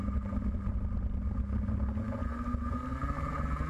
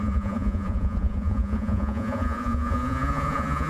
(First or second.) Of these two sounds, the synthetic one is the second